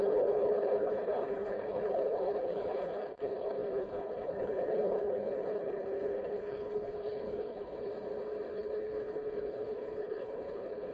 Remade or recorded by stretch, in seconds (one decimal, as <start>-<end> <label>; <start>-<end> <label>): 0.0-7.9 remade; 7.9-8.5 recorded; 8.5-10.9 remade